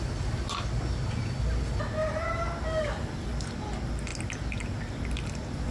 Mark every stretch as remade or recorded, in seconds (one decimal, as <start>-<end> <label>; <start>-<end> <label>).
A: 0.0-5.7 recorded